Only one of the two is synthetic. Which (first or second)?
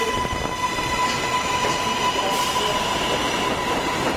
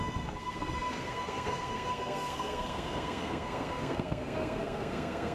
second